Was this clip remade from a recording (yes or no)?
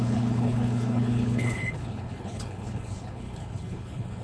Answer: yes